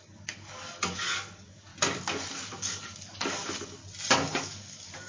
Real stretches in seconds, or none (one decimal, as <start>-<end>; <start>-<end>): 1.7-2.5; 3.8-4.3